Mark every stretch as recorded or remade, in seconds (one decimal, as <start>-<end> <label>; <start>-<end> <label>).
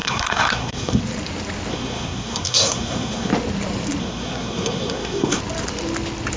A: 0.0-1.0 remade; 1.0-1.7 recorded; 1.7-3.3 remade; 3.3-4.0 recorded; 4.0-5.4 remade; 5.4-6.4 recorded